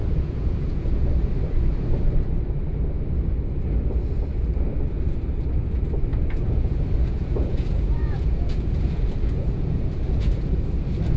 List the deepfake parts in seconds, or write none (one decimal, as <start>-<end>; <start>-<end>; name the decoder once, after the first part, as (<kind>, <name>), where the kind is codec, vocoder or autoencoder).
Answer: 0.0-1.3 (vocoder, Vocos); 6.1-10.6